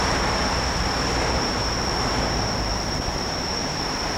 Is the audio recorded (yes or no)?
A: no